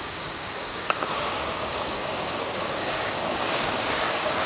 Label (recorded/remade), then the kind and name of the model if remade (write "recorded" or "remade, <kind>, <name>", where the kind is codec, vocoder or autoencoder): remade, codec, DAC